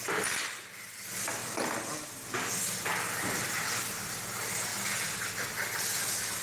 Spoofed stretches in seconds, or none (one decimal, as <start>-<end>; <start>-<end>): none